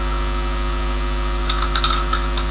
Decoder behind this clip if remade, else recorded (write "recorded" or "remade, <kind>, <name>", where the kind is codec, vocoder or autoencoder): recorded